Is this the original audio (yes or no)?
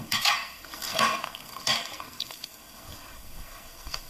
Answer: no